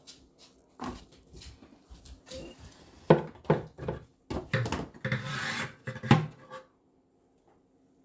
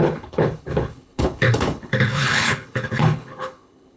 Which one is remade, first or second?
second